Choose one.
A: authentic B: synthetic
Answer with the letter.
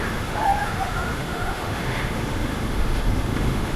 B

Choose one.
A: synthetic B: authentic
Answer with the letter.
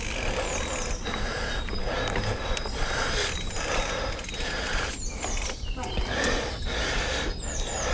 B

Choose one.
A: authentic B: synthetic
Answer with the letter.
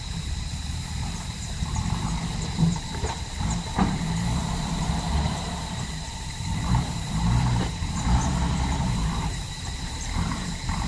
B